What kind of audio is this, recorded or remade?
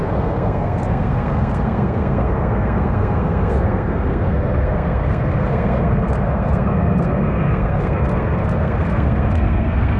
remade